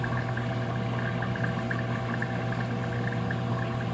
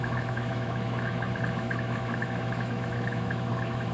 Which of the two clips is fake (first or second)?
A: second